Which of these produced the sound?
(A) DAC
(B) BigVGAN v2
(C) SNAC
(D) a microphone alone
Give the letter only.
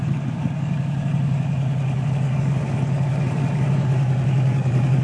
A